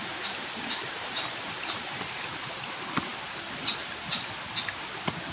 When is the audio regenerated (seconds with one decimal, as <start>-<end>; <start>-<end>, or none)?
0.0-2.6